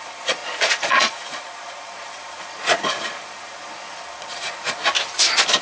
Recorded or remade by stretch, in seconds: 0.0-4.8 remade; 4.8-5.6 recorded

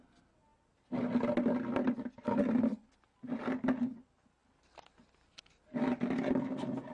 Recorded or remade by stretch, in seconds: 0.0-6.9 recorded

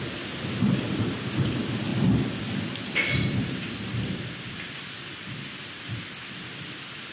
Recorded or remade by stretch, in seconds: 0.0-3.9 recorded; 3.9-6.0 remade; 6.0-7.1 recorded

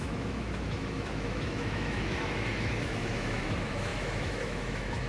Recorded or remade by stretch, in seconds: 0.0-5.1 remade

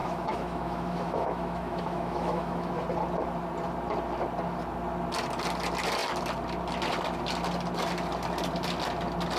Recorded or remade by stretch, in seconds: 0.0-2.7 remade; 2.7-9.4 recorded

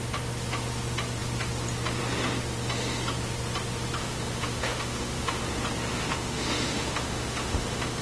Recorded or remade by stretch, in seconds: 0.0-4.0 recorded; 4.0-5.4 remade; 5.4-5.9 recorded; 5.9-8.0 remade

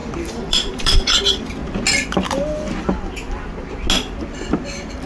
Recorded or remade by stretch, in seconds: 0.0-1.6 remade; 1.6-4.5 recorded; 4.5-5.1 remade

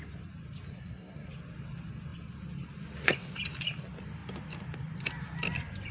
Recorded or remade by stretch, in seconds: 0.0-0.7 recorded; 0.7-1.3 remade; 1.3-5.9 recorded